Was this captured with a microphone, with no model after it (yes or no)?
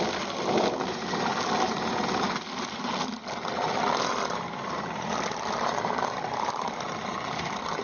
no